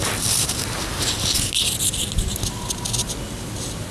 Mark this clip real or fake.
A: real